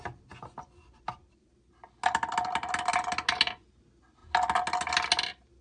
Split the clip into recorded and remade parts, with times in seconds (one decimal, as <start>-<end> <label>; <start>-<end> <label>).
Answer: 0.0-5.6 recorded